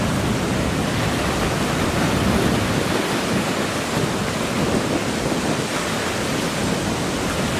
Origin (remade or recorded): recorded